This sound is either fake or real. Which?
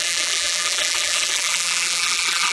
fake